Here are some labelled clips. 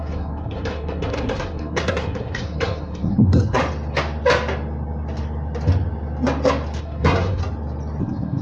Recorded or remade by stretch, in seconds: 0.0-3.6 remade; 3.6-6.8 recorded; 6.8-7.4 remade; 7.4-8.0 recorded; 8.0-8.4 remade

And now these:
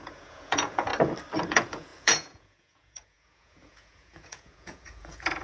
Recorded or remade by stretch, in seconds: 0.0-0.9 remade; 0.9-1.5 recorded; 1.5-5.4 remade

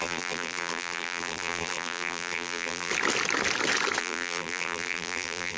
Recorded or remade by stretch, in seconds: 0.0-2.9 remade; 2.9-4.0 recorded; 4.0-5.6 remade

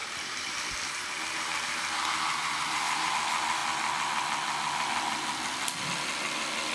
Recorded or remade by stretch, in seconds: 0.0-3.1 remade; 3.1-6.7 recorded

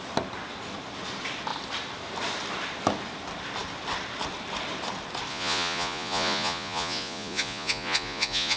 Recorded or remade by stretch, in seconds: 0.0-5.3 recorded; 5.3-8.6 remade

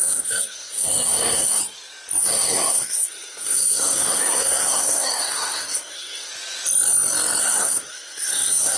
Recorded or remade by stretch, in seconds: 0.0-1.6 remade; 1.6-2.2 recorded; 2.2-6.3 remade; 6.3-7.4 recorded; 7.4-8.8 remade